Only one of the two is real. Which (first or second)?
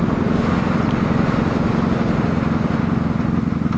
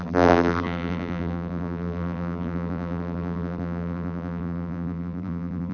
first